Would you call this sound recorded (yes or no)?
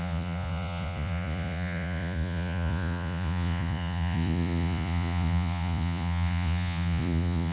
no